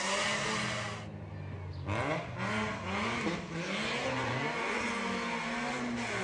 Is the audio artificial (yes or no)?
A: no